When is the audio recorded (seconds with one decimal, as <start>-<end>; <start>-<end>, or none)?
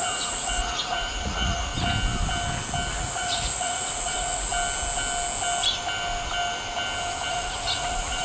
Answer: 1.7-2.9; 4.5-7.3